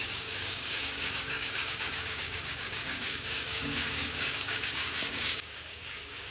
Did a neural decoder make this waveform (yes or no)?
yes